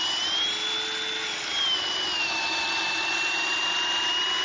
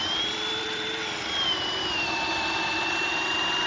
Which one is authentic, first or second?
first